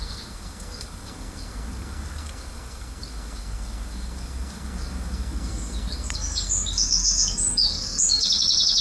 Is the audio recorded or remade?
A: remade